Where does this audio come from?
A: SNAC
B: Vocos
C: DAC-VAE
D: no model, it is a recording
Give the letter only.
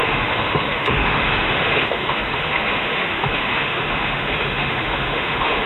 C